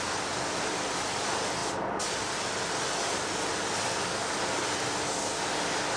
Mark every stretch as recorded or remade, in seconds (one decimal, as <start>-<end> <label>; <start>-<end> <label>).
0.0-6.0 recorded